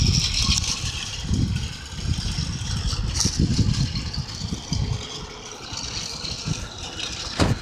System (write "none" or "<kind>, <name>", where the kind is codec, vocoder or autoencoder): none